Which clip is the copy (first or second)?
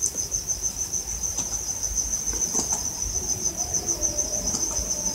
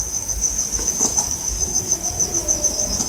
second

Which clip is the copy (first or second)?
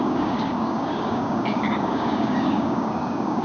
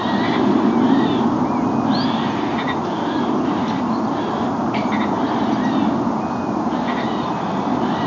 first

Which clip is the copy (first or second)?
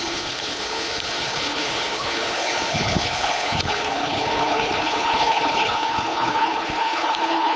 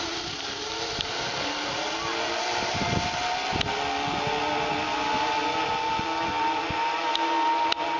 first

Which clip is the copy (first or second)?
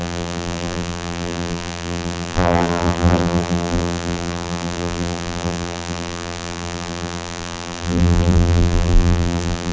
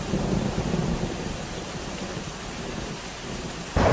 first